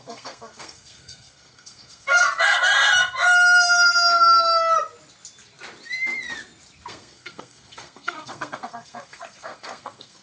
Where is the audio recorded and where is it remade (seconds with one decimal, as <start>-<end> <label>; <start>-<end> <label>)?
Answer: 0.0-2.7 remade; 2.7-6.9 recorded; 6.9-10.2 remade